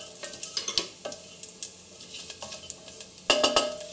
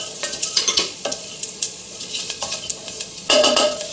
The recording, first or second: first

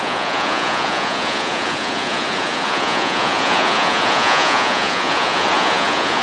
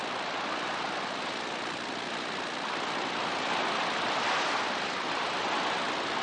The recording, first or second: second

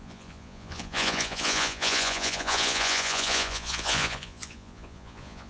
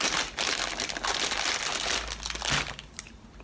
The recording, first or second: second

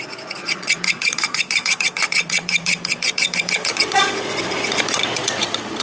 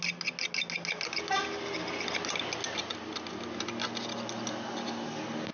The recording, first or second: second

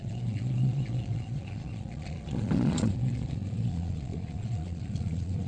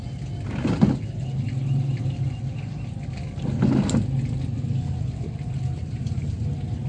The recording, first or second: second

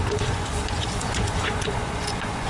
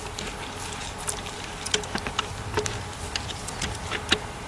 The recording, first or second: second